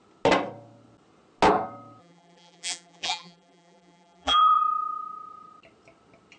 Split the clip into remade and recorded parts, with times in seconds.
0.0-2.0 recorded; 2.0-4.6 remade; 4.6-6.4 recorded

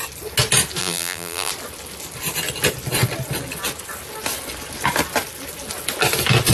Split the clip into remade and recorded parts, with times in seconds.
0.0-0.8 recorded; 0.8-1.5 remade; 1.5-6.5 recorded

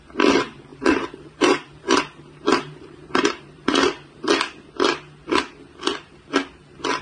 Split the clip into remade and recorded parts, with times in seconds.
0.0-0.7 recorded; 0.7-4.3 remade; 4.3-7.0 recorded

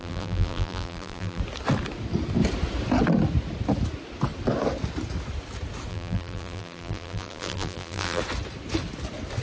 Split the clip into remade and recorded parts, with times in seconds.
0.0-1.4 remade; 1.4-5.9 recorded; 5.9-8.2 remade; 8.2-9.4 recorded

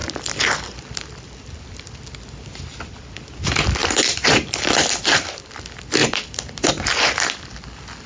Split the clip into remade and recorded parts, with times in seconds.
0.0-1.0 remade; 1.0-3.8 recorded; 3.8-5.5 remade; 5.5-6.0 recorded; 6.0-6.7 remade; 6.7-8.1 recorded